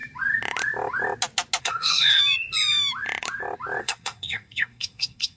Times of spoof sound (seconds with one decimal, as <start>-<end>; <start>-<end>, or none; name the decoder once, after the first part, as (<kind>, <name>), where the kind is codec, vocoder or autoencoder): 1.6-2.2 (codec, SNAC); 3.8-5.4